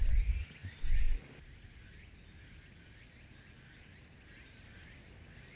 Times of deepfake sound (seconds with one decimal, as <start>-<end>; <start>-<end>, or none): none